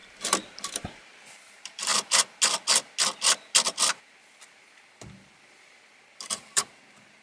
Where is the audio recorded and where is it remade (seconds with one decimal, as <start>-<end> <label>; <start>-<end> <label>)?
0.0-0.6 recorded; 0.6-1.9 remade; 1.9-6.2 recorded; 6.2-7.2 remade